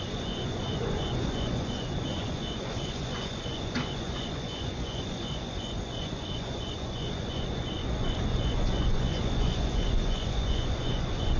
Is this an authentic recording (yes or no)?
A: no